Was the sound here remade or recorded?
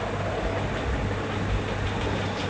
recorded